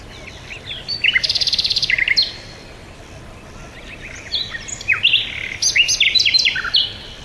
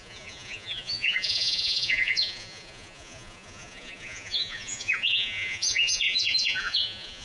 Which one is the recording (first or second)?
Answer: first